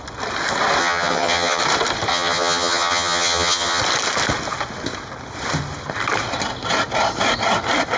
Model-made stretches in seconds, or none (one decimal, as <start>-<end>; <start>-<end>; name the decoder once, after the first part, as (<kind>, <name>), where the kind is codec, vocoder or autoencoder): 0.8-1.6 (vocoder, HiFi-GAN); 2.1-3.8